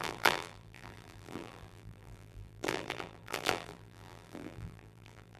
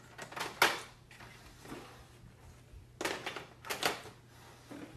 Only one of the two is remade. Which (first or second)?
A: first